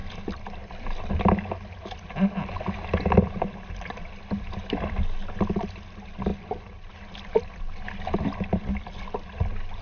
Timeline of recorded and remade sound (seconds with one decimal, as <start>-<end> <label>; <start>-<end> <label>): 0.0-6.3 recorded; 6.3-6.9 remade; 6.9-9.8 recorded